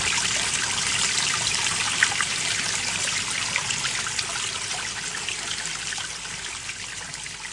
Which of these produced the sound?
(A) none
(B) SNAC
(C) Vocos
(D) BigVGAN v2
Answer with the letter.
A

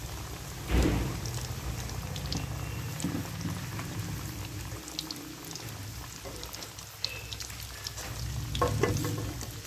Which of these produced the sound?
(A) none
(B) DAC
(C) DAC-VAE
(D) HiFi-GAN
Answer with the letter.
A